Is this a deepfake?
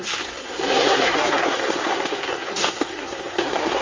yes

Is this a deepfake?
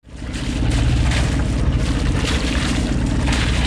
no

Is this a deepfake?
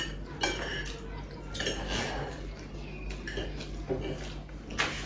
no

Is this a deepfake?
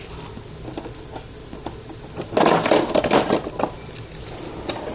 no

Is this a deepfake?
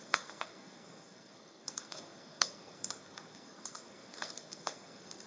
yes